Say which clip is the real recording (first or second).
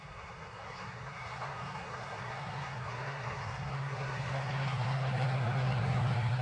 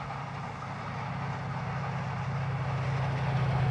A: second